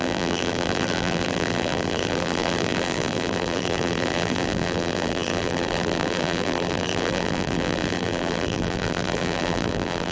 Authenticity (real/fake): fake